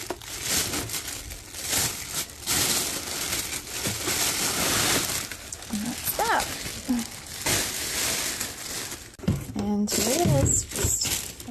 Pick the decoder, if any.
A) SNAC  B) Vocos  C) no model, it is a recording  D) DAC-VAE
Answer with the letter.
C